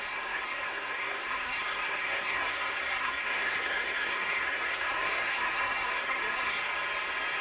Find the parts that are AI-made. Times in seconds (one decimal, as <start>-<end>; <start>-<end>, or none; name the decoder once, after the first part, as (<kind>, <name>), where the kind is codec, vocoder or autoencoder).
0.0-6.7 (codec, SNAC)

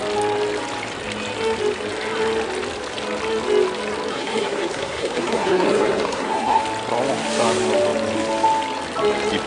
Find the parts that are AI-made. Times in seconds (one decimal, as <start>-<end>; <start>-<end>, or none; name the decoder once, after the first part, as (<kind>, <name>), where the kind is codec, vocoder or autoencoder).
4.1-6.6 (codec, SNAC)

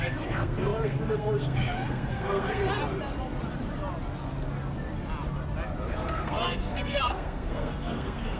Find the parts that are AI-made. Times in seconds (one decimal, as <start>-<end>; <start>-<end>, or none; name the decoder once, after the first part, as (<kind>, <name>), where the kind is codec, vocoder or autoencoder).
0.0-2.8 (codec, SNAC); 5.9-8.4

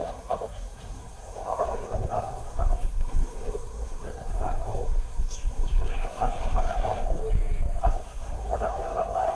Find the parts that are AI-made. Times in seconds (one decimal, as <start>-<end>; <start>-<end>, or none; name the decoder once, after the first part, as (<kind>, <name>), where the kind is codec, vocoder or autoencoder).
0.0-7.2 (codec, SNAC); 7.8-9.4

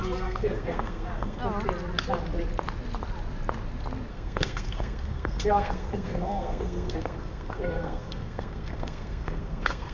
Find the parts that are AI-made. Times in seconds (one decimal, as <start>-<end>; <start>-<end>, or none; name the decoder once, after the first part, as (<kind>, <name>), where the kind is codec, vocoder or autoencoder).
0.0-1.4 (codec, SNAC); 4.1-9.9

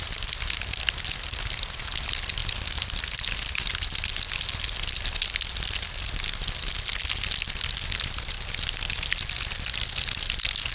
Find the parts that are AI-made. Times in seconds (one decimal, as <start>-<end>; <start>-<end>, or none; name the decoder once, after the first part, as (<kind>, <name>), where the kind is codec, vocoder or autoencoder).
none

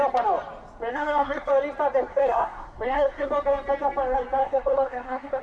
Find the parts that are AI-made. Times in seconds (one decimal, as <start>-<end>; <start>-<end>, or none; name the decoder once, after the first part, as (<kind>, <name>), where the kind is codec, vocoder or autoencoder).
0.9-1.5 (codec, SNAC); 2.1-3.3; 4.4-5.4

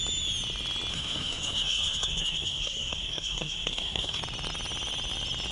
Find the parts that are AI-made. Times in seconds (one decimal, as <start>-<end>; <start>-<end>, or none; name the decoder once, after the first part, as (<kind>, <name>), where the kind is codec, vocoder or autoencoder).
0.9-4.2 (codec, SNAC)